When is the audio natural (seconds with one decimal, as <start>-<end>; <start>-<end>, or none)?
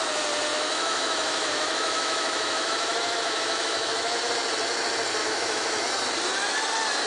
0.0-0.5; 4.2-5.2; 5.8-7.1